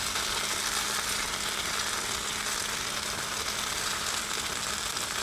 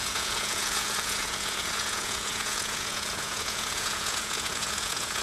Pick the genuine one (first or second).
first